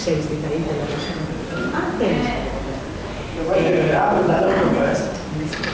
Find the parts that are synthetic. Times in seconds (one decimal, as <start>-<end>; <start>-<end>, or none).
none